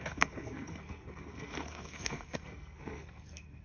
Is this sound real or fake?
fake